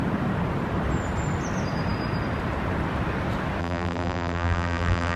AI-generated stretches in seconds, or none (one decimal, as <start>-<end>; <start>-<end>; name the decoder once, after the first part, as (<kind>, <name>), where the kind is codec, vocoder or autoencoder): 3.6-5.2 (vocoder, BigVGAN v2)